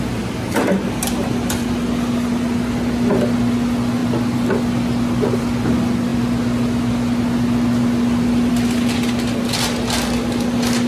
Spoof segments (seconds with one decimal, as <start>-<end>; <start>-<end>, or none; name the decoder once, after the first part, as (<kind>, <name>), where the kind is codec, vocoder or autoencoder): none